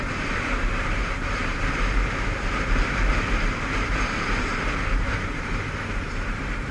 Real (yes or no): no